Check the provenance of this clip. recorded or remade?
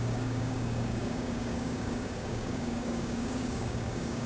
remade